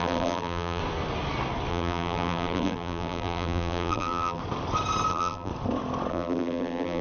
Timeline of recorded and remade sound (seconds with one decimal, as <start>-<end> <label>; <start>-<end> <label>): 0.0-0.8 remade; 0.8-1.7 recorded; 1.7-4.4 remade; 4.4-5.1 recorded; 5.1-5.5 remade; 5.5-6.1 recorded; 6.1-7.0 remade